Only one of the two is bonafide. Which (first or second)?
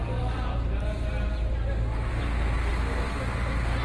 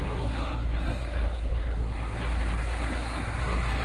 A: first